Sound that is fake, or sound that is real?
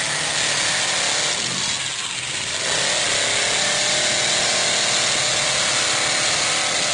real